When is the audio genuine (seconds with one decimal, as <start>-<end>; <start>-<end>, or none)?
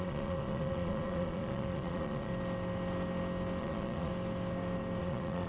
2.3-3.6; 4.1-5.0